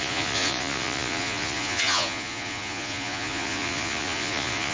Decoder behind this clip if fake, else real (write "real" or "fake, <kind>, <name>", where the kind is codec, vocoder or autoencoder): fake, vocoder, Vocos